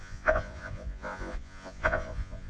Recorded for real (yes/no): no